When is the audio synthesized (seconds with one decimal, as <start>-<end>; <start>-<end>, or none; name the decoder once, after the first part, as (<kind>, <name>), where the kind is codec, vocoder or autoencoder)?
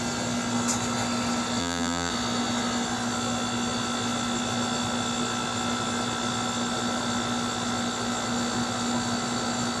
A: 1.6-2.1 (vocoder, BigVGAN v2)